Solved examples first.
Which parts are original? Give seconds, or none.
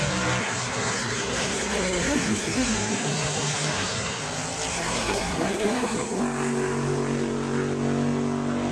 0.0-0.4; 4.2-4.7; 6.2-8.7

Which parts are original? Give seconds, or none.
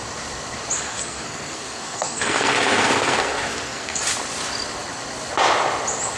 0.0-0.9; 4.0-6.2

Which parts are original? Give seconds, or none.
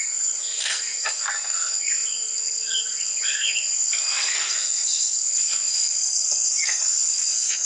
none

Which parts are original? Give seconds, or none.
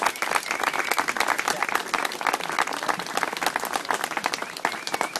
0.0-5.2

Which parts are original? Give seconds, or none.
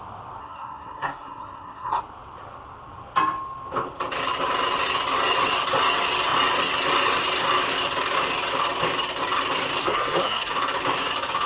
0.0-0.4; 2.0-9.8; 10.5-11.5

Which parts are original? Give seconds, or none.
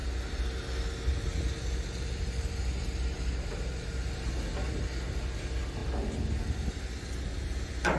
0.0-8.0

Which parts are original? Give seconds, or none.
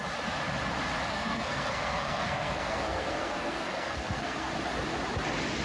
0.0-1.1; 4.5-5.6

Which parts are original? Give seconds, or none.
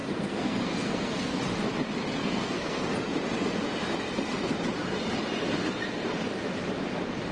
1.4-2.2; 2.8-7.3